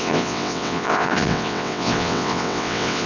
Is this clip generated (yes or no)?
yes